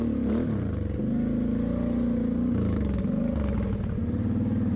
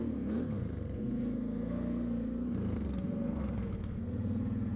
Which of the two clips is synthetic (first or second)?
second